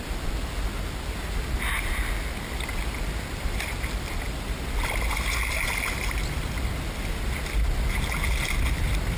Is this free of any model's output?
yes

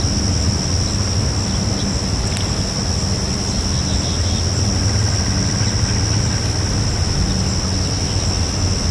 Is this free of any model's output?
yes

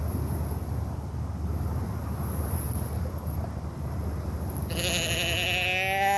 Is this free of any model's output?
yes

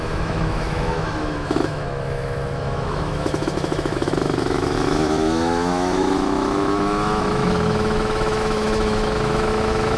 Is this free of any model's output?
no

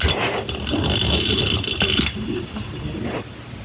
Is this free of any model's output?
yes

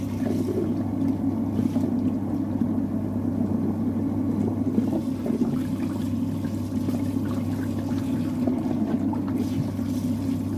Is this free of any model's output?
yes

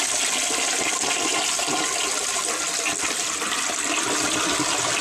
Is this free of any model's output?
yes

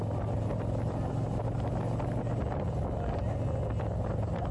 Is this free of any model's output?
yes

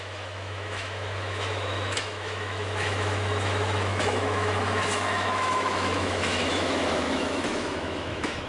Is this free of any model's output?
no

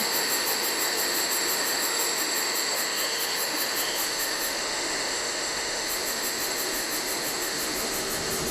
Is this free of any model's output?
no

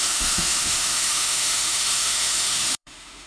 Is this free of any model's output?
no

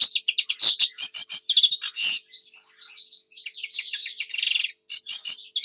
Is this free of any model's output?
yes